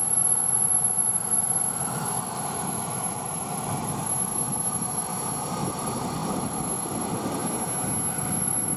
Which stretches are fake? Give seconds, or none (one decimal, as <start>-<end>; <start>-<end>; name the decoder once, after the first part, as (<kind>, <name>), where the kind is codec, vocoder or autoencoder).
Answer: 0.0-5.1 (vocoder, BigVGAN v2); 5.7-7.4; 8.1-8.8

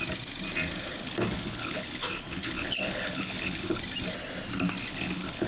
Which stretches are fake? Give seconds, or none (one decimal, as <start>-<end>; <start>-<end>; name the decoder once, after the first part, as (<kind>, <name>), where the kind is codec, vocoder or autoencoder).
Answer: 1.0-3.8 (codec, HILCodec); 4.9-5.5

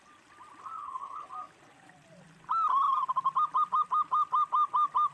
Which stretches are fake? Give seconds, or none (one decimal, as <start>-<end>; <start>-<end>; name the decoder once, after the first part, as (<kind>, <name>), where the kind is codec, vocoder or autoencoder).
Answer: 0.8-1.3 (codec, HILCodec)